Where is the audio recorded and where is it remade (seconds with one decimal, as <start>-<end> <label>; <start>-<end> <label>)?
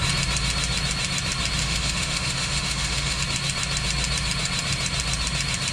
0.0-1.6 recorded; 1.6-3.2 remade; 3.2-5.7 recorded